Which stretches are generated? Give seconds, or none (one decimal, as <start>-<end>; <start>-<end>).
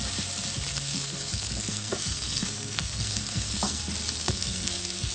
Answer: 0.7-3.8; 4.2-5.1